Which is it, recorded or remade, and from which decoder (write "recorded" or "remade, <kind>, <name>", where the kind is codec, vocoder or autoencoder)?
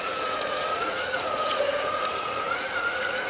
remade, vocoder, Vocos